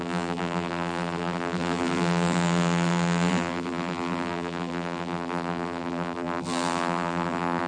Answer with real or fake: fake